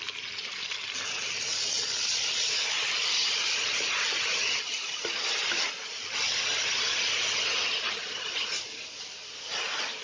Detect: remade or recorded recorded